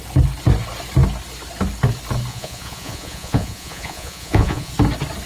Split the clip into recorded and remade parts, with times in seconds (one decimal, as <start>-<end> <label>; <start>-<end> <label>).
0.0-2.3 recorded; 2.3-4.7 remade; 4.7-5.3 recorded